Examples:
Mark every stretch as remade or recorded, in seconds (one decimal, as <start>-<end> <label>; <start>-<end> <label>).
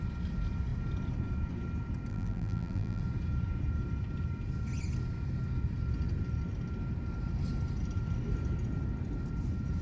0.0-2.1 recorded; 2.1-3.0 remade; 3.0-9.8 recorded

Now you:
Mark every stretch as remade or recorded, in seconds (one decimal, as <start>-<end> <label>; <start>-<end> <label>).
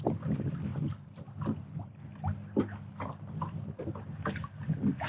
0.0-5.1 recorded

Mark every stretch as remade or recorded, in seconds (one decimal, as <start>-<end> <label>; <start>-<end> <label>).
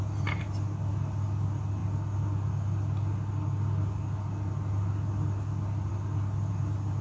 0.0-7.0 recorded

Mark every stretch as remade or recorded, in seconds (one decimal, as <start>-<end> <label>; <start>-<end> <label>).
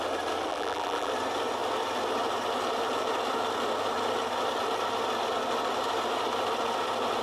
0.0-0.5 recorded; 0.5-1.1 remade; 1.1-7.2 recorded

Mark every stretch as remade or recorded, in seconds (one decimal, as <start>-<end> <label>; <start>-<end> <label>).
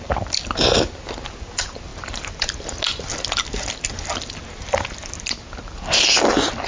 0.0-1.9 recorded; 1.9-2.7 remade; 2.7-6.7 recorded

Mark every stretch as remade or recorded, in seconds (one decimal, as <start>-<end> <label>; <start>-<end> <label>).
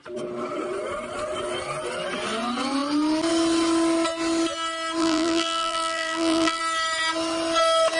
0.0-5.0 recorded; 5.0-6.6 remade; 6.6-8.0 recorded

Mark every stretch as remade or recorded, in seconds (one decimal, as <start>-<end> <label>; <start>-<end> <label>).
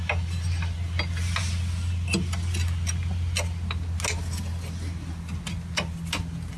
0.0-6.6 recorded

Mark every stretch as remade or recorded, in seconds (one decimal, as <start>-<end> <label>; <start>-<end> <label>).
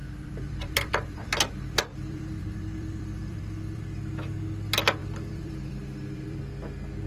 0.0-3.8 remade; 3.8-5.0 recorded; 5.0-6.4 remade; 6.4-7.1 recorded